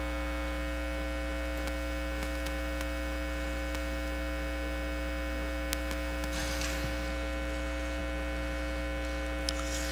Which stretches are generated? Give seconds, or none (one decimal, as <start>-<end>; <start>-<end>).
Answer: none